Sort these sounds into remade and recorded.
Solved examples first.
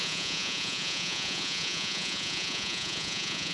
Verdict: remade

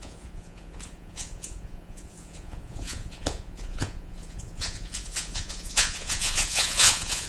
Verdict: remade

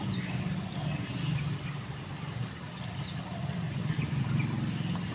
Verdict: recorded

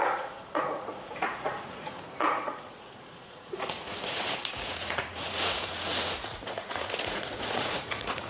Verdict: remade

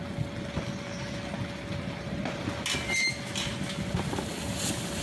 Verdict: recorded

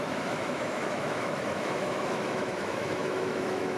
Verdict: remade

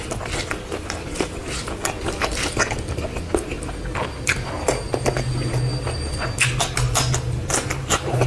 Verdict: recorded